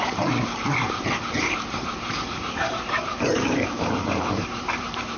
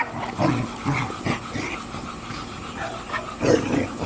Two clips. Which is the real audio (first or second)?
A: second